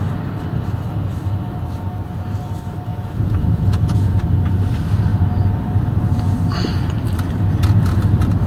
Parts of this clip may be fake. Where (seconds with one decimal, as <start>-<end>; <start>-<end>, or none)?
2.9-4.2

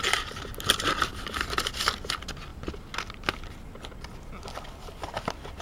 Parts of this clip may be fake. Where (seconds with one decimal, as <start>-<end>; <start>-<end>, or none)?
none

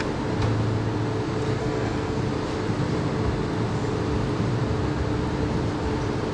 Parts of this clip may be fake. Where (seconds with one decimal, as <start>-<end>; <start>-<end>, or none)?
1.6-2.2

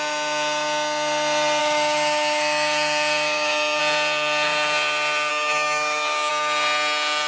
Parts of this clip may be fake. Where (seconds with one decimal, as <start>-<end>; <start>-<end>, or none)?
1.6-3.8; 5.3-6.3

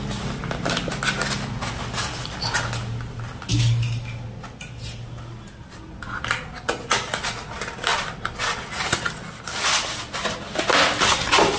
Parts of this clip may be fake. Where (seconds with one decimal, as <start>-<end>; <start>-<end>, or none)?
none

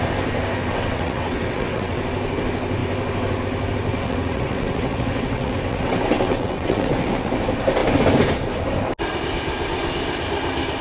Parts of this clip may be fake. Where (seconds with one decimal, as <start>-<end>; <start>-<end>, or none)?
0.7-2.0; 3.9-7.3